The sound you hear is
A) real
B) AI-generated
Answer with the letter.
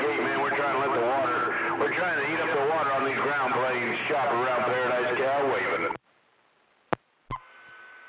A